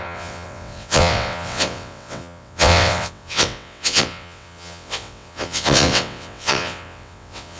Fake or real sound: fake